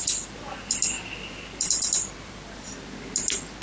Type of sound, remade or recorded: recorded